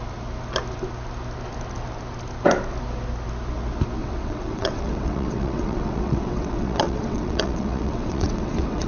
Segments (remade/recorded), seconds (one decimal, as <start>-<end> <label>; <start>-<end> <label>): 0.0-4.0 recorded; 4.0-8.9 remade